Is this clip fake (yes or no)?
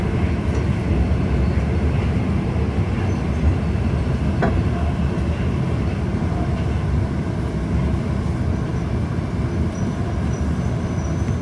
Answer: no